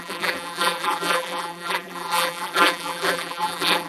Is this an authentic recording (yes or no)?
no